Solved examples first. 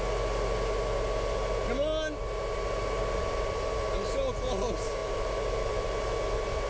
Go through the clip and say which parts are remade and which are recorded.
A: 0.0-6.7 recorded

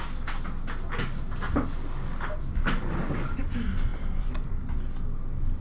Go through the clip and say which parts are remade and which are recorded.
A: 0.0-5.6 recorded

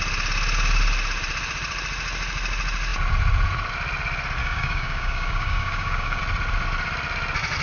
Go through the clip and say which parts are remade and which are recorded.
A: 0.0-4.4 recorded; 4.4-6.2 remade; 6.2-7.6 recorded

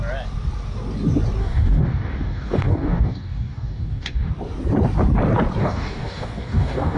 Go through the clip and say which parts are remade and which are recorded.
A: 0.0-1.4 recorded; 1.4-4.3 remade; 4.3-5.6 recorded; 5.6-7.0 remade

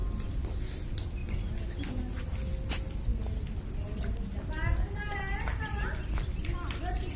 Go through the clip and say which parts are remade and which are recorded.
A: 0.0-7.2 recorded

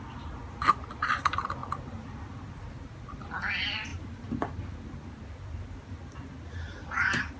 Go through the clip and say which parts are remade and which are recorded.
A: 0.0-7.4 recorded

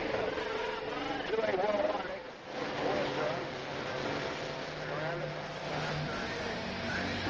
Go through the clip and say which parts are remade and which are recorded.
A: 0.0-7.3 recorded

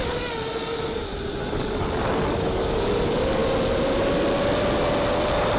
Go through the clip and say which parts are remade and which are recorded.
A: 0.0-0.5 remade; 0.5-1.4 recorded; 1.4-3.4 remade; 3.4-5.6 recorded